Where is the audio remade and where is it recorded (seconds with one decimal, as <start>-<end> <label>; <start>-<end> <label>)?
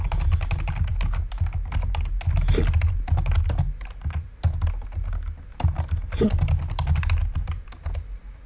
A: 0.0-8.5 recorded